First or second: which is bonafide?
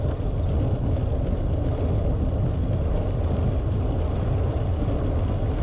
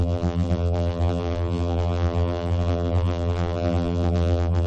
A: first